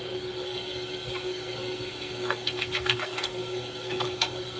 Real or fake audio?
fake